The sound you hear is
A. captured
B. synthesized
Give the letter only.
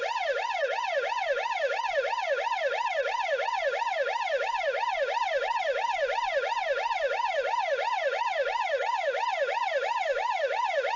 A